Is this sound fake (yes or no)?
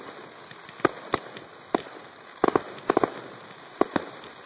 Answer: no